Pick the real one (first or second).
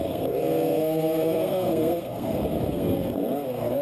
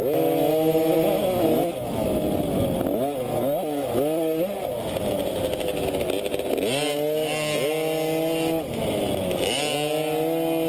second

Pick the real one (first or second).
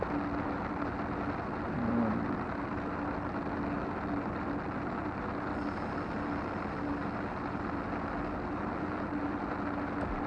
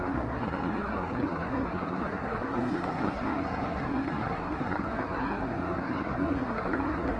first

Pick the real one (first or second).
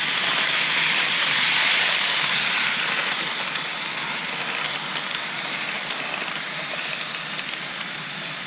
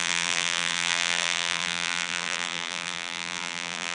first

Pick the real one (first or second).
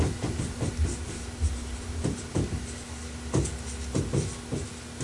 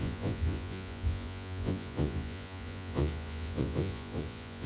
first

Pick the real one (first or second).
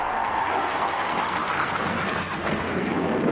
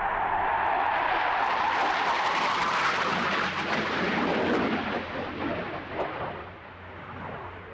second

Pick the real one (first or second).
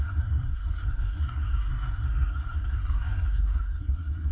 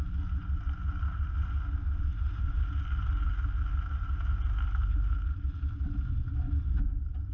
second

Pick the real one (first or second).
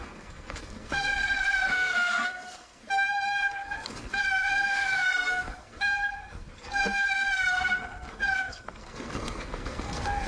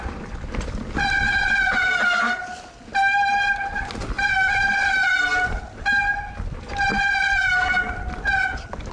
second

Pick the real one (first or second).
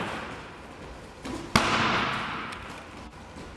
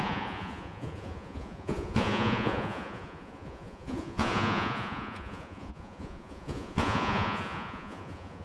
first